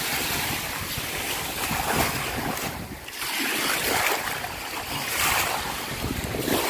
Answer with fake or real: real